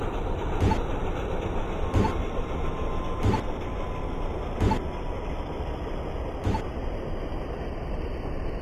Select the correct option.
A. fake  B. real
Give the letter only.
B